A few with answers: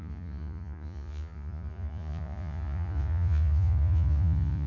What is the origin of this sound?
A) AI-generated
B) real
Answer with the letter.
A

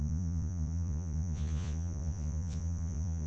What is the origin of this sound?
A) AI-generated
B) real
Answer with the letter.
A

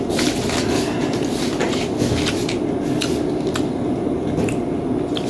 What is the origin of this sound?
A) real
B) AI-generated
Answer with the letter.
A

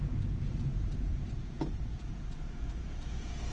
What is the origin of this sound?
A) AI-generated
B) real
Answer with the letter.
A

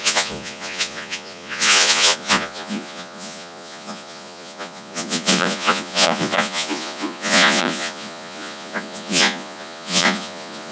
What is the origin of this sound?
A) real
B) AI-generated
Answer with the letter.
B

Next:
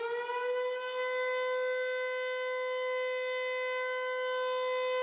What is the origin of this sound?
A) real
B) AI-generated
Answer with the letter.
A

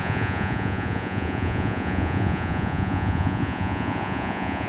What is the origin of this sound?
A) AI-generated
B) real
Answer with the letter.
A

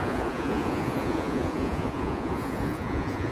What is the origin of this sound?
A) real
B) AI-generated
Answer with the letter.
B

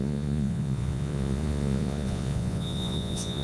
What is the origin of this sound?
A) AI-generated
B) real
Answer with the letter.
A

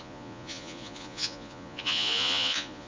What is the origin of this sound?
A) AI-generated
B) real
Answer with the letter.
A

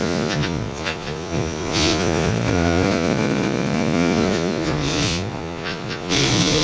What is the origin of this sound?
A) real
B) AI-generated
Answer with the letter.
B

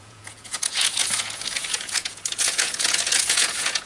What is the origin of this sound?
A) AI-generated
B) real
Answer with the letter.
A